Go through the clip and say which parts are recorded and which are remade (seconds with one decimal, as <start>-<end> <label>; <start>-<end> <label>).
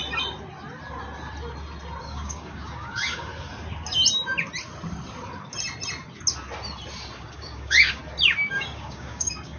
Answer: 0.0-2.0 recorded; 2.0-3.3 remade; 3.3-7.2 recorded; 7.2-8.0 remade; 8.0-8.5 recorded; 8.5-9.6 remade